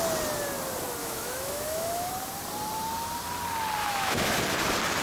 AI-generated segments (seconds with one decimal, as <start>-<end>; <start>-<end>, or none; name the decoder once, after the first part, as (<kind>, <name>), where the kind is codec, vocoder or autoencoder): 1.0-2.1 (autoencoder, DAC-VAE); 3.8-4.4